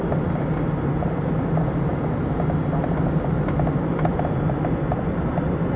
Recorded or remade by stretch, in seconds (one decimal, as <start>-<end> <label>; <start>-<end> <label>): 0.0-5.8 recorded